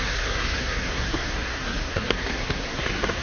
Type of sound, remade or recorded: remade